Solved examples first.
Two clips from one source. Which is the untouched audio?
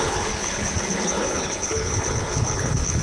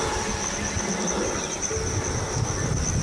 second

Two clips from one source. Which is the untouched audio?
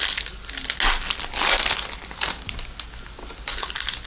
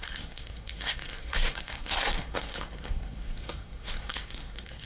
first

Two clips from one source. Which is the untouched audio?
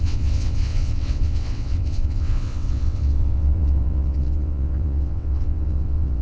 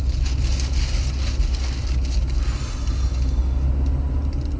second